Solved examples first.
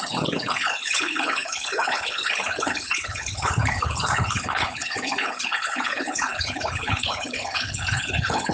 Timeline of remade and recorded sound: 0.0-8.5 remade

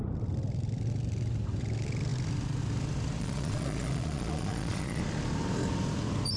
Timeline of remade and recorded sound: 0.0-3.2 recorded; 3.2-5.0 remade; 5.0-6.4 recorded

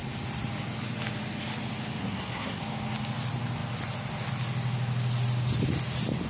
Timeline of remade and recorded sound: 0.0-2.0 recorded; 2.0-2.6 remade; 2.6-6.3 recorded

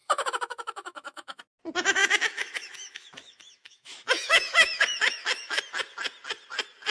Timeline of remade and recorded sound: 0.0-1.4 remade; 1.4-2.0 recorded; 2.0-5.6 remade; 5.6-6.9 recorded

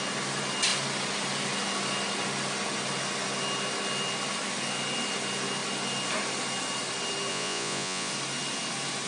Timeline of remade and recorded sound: 0.0-7.3 recorded; 7.3-8.1 remade; 8.1-9.1 recorded

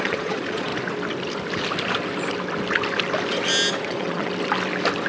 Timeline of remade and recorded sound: 0.0-0.7 remade; 0.7-3.8 recorded; 3.8-4.3 remade; 4.3-5.1 recorded

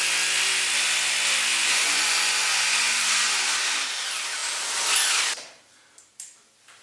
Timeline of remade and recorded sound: 0.0-1.5 recorded; 1.5-3.3 remade; 3.3-6.8 recorded